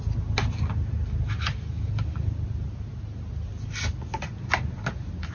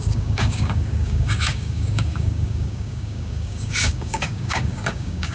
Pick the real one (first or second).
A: first